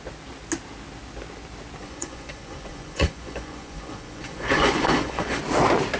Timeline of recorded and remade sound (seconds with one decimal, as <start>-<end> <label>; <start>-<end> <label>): 0.0-1.8 recorded; 1.8-5.4 remade; 5.4-6.0 recorded

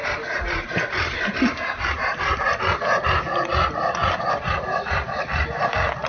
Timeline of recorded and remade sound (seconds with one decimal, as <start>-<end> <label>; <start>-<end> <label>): 0.0-2.7 remade; 2.7-6.1 recorded

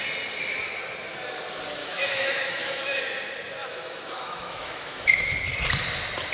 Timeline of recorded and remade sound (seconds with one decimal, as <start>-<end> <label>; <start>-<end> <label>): 0.0-1.8 recorded; 1.8-3.0 remade; 3.0-3.6 recorded; 3.6-5.3 remade; 5.3-6.3 recorded

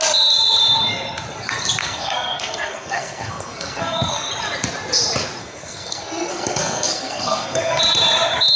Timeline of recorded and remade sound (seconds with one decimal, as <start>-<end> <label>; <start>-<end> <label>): 0.0-1.8 recorded; 1.8-4.3 remade; 4.3-5.4 recorded; 5.4-7.8 remade; 7.8-8.6 recorded

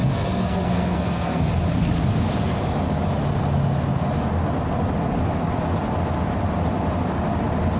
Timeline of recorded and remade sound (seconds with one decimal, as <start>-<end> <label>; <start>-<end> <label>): 0.0-1.4 remade; 1.4-7.8 recorded

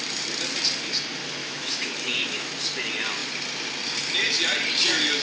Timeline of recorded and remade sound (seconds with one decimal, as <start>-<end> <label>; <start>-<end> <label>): 0.0-1.4 recorded; 1.4-2.5 remade; 2.5-5.2 recorded

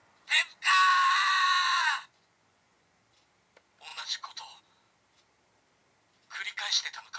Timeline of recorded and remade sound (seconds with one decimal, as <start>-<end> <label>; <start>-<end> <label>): 0.0-0.7 remade; 0.7-1.3 recorded; 1.3-3.0 remade; 3.0-3.9 recorded; 3.9-4.6 remade; 4.6-7.2 recorded